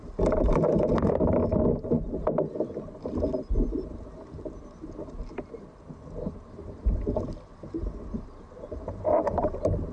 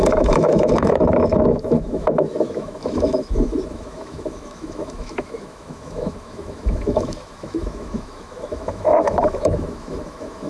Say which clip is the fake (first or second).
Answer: second